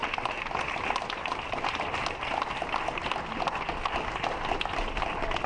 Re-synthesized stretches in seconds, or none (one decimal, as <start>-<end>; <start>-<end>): none